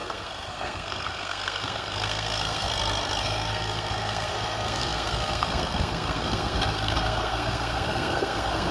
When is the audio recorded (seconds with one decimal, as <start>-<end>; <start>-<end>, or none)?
2.7-3.2